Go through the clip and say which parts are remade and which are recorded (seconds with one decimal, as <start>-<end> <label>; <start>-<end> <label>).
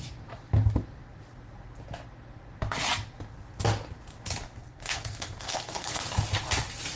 0.0-4.6 recorded; 4.6-6.0 remade; 6.0-7.0 recorded